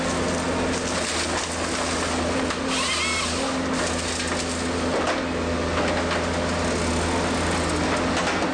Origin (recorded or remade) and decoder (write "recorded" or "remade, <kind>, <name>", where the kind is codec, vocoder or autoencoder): recorded